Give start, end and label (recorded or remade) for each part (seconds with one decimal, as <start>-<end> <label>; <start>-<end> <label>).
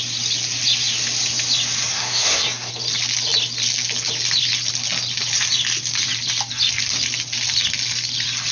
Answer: 0.0-1.9 recorded; 1.9-2.7 remade; 2.7-8.5 recorded